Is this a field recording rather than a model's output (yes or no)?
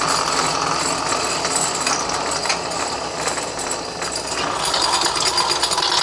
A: yes